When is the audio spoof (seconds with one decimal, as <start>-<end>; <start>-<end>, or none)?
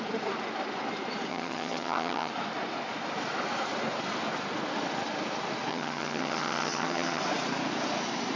1.3-2.3; 5.7-7.2